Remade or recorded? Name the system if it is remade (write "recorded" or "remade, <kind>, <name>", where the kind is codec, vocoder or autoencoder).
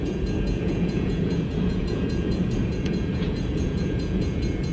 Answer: remade, vocoder, Vocos